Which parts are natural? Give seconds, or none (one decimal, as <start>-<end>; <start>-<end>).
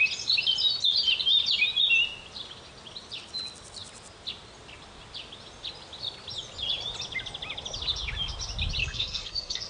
0.0-8.8